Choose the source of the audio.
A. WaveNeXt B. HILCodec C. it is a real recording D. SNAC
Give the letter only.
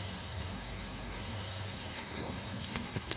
D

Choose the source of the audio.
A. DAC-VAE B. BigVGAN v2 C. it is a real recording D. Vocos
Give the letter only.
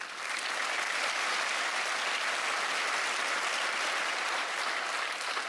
C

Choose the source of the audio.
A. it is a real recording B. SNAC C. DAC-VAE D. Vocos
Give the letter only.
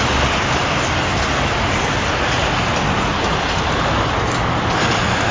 A